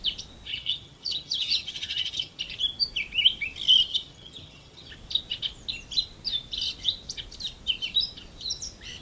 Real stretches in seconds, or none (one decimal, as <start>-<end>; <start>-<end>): 0.0-0.5; 2.4-3.9; 4.9-9.0